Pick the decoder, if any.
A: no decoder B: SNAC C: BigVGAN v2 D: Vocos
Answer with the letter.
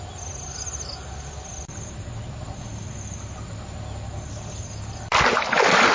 A